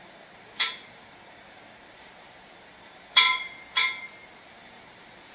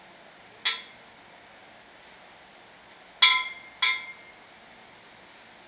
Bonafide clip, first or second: second